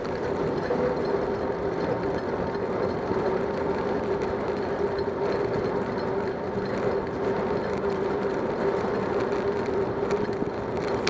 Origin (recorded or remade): recorded